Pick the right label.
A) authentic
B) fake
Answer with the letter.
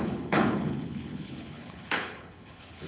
B